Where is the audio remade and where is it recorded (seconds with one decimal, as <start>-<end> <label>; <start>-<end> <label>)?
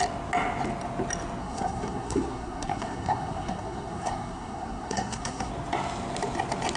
0.0-1.4 recorded; 1.4-5.5 remade; 5.5-6.8 recorded